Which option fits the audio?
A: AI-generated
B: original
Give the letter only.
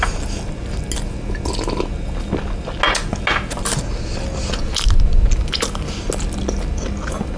B